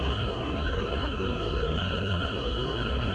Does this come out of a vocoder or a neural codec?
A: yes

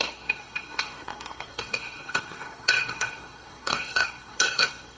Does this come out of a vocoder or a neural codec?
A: yes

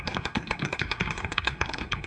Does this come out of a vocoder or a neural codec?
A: yes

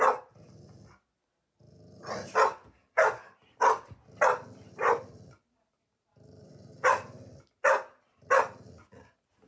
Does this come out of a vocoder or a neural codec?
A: no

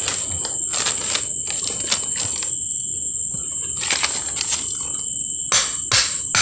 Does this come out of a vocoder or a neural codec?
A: no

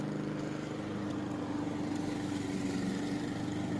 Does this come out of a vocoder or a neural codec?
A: no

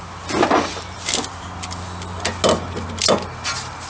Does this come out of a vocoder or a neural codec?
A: no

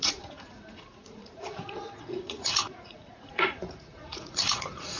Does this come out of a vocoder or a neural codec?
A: yes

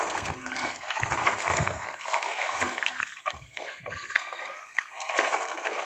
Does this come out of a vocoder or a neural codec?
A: yes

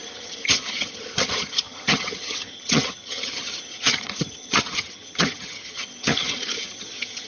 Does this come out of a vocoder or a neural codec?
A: yes